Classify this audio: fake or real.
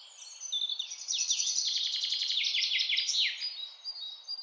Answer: real